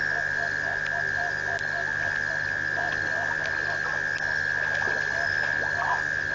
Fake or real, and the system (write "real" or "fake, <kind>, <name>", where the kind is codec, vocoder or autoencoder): real